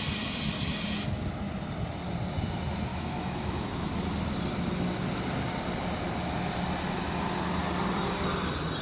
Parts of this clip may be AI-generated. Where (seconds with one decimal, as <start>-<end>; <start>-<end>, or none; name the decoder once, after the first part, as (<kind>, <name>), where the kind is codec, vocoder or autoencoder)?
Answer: 2.9-3.9 (autoencoder, DAC-VAE)

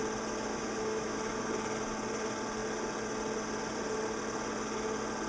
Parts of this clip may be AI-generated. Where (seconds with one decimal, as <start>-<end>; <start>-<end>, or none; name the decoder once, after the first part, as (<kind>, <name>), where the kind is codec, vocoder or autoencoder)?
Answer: 0.5-1.5 (autoencoder, DAC-VAE)

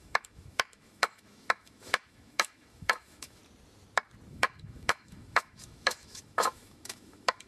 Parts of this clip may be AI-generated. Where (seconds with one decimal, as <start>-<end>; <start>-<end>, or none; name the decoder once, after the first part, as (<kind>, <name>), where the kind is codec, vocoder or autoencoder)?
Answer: 0.0-3.4 (autoencoder, DAC-VAE); 4.3-7.5

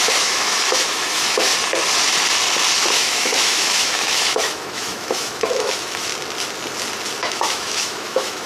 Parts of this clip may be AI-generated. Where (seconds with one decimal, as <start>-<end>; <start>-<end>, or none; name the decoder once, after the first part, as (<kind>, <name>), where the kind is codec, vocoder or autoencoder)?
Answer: 0.0-1.5 (autoencoder, DAC-VAE); 2.9-6.1; 7.2-8.5

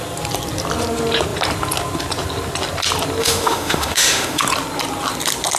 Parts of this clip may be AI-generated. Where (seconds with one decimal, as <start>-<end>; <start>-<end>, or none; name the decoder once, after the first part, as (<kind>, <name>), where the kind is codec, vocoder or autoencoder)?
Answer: 3.2-4.4 (autoencoder, DAC-VAE)

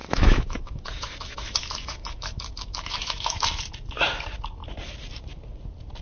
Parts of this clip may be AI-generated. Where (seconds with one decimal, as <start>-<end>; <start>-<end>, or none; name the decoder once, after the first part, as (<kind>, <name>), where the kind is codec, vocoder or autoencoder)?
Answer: 0.0-3.6 (autoencoder, DAC-VAE)